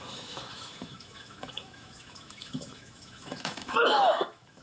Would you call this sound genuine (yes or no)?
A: no